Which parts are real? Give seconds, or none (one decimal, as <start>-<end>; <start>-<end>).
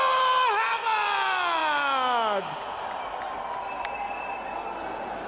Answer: 0.0-5.3